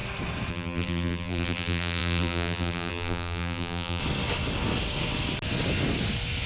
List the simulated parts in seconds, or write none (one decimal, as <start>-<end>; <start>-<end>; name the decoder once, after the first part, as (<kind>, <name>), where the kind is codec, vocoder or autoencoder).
0.5-4.0 (vocoder, BigVGAN v2)